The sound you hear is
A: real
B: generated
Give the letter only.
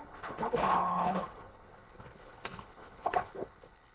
B